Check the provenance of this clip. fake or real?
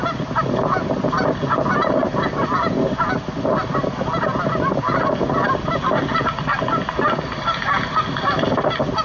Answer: real